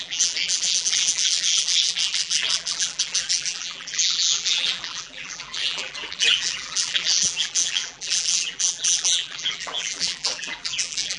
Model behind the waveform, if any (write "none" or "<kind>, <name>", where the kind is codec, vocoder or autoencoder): vocoder, BigVGAN v2